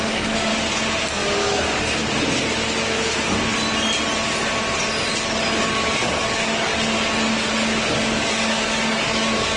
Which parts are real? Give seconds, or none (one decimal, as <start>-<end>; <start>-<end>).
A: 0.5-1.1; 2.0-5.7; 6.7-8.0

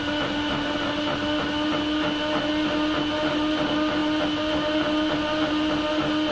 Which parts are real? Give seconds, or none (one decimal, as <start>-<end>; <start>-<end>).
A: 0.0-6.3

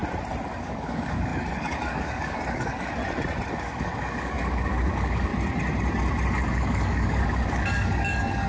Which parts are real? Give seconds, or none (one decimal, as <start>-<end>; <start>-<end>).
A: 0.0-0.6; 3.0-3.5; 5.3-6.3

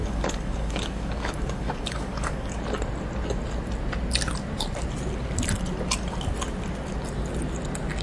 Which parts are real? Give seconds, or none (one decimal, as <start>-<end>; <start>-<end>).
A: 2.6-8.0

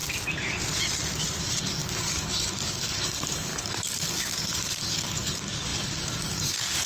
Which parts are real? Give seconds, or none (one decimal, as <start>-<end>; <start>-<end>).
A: 0.0-1.4

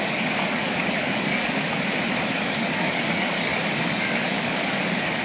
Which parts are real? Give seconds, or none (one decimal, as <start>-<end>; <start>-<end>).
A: 1.7-2.2